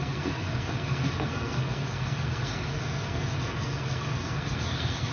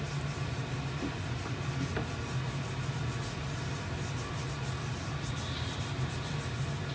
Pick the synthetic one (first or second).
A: first